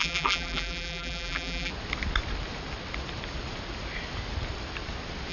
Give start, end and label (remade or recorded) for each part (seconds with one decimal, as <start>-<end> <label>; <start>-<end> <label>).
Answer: 0.0-1.7 remade; 1.7-5.3 recorded